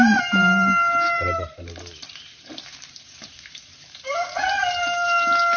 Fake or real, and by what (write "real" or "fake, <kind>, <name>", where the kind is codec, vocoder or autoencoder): fake, vocoder, BigVGAN v2